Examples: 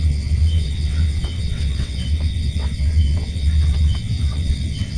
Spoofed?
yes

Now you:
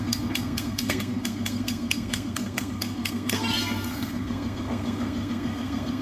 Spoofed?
yes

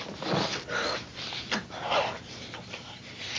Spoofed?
no